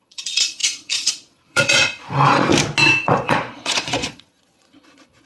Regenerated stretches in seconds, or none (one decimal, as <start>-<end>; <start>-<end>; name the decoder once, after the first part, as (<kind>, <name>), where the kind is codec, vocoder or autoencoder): 0.0-2.5 (vocoder, Vocos); 3.0-5.3

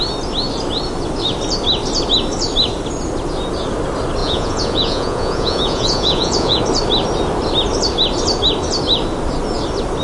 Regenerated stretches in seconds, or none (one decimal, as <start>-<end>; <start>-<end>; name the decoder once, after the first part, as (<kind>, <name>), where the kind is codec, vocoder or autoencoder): 4.2-6.6 (vocoder, Vocos)

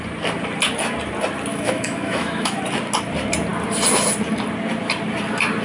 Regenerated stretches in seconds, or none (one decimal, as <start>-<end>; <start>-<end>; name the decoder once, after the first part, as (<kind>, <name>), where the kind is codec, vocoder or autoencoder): 1.5-2.6 (autoencoder, DAC-VAE)